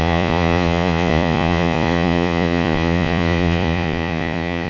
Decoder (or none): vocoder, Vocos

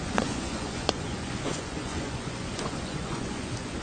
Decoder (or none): vocoder, Vocos